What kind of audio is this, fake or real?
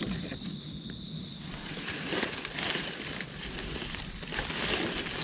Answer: real